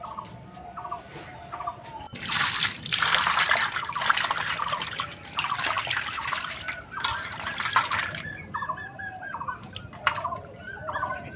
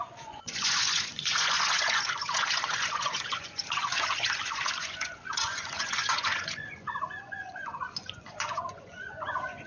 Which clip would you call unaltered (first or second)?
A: first